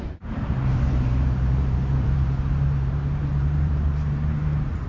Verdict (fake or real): fake